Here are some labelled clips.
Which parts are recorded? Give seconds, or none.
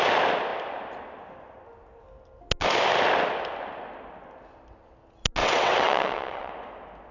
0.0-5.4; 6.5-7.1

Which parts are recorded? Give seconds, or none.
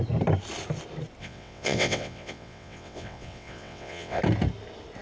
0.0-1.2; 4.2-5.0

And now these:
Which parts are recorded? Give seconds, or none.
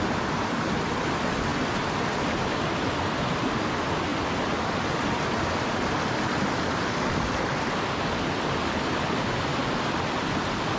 0.0-10.8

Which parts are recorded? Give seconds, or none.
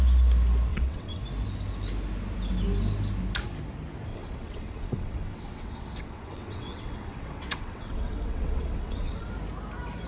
0.0-0.7; 1.2-4.1; 9.3-10.1